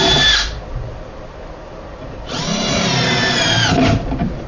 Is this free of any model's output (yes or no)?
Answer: no